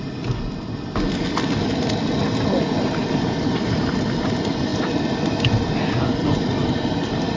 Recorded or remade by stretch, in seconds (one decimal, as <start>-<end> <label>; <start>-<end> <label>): 0.0-7.4 recorded